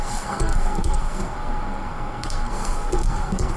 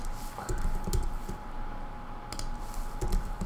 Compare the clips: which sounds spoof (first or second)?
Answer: first